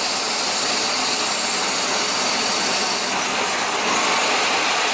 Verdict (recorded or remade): recorded